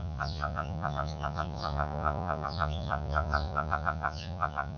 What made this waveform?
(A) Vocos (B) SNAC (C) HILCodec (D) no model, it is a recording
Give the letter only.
A